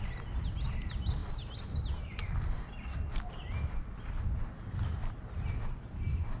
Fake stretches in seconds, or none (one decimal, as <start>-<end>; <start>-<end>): none